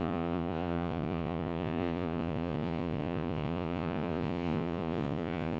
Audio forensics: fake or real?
fake